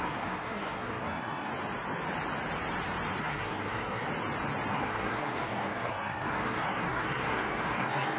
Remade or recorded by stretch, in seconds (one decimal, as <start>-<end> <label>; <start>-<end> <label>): 0.0-1.5 remade; 1.5-3.2 recorded; 3.2-4.1 remade; 4.1-4.7 recorded; 4.7-8.2 remade